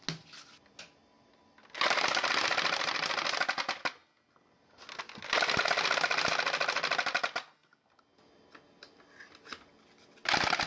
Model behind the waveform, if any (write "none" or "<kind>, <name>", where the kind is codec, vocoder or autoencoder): none